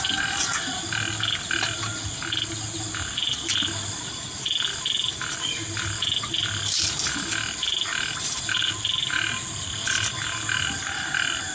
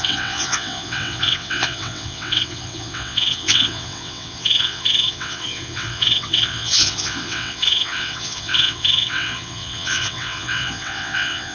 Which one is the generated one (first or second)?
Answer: second